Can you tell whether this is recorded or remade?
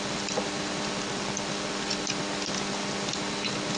recorded